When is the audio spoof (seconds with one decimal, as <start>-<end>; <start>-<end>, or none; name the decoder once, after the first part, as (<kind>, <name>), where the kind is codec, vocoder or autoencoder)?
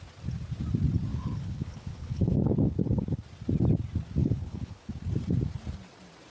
1.1-3.2 (codec, HILCodec); 4.2-4.9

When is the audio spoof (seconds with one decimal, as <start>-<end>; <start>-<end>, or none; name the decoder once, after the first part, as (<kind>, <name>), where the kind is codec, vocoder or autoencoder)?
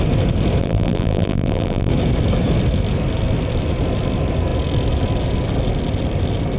0.6-1.9 (vocoder, BigVGAN v2)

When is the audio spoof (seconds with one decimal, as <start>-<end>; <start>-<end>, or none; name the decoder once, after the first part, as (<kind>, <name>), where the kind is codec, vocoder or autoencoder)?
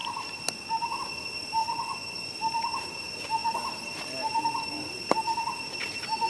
1.6-2.3 (vocoder, Vocos)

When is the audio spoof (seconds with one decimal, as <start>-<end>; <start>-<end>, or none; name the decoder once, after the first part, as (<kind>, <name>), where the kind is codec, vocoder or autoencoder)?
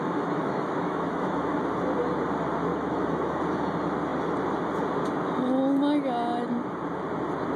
0.0-1.6 (autoencoder, DAC-VAE); 2.7-3.4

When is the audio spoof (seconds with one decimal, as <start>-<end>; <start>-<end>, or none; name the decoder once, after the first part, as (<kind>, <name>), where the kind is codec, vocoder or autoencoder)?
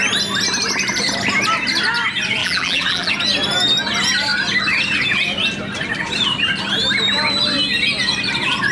2.4-3.1 (vocoder, BigVGAN v2)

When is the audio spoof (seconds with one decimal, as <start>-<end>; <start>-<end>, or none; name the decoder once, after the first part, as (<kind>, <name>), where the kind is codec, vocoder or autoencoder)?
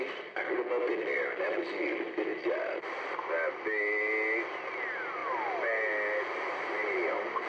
none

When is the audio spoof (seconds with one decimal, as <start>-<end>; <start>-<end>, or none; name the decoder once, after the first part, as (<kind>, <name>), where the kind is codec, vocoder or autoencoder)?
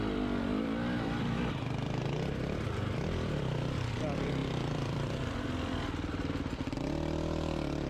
0.5-3.9 (vocoder, BigVGAN v2); 4.4-5.4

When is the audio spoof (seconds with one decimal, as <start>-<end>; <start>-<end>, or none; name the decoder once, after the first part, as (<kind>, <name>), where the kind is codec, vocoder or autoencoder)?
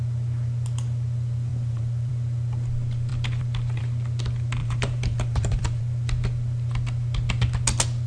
1.5-2.1 (vocoder, BigVGAN v2); 4.6-5.8